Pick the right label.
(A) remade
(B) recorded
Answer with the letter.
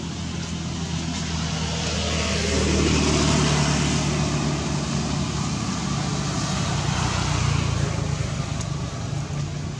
B